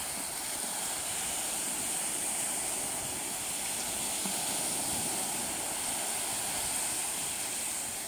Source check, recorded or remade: recorded